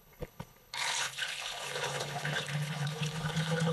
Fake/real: fake